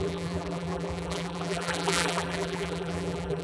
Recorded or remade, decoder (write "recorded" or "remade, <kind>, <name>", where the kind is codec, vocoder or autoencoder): remade, vocoder, BigVGAN v2